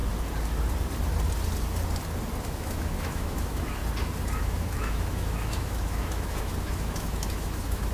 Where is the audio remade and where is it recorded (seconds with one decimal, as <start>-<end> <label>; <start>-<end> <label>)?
0.0-2.4 recorded; 2.4-3.8 remade; 3.8-4.4 recorded; 4.4-7.9 remade